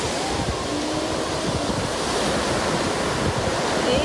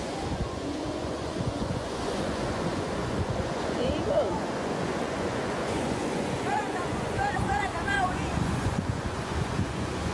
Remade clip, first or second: second